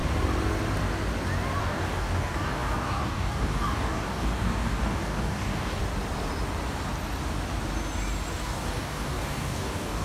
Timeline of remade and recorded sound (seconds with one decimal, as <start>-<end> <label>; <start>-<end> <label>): 0.0-1.6 recorded; 1.6-5.8 remade; 5.8-8.4 recorded; 8.4-10.0 remade